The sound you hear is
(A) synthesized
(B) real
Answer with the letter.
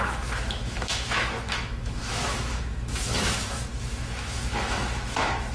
A